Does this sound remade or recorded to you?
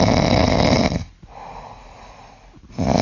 recorded